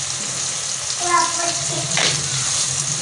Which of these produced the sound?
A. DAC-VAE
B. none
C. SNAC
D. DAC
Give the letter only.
B